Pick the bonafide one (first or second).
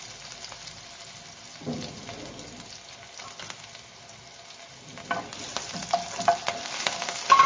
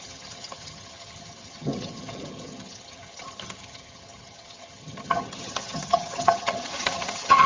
first